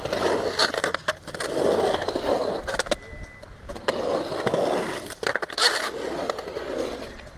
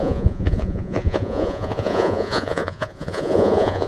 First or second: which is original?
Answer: first